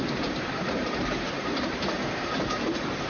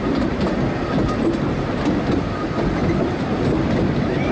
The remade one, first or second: first